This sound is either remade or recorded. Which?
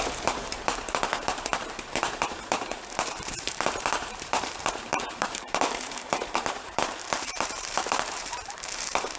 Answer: remade